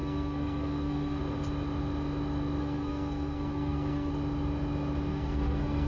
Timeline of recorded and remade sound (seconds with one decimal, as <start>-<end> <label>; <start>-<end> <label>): 0.0-1.2 remade; 1.2-2.6 recorded; 2.6-4.1 remade; 4.1-5.1 recorded; 5.1-5.9 remade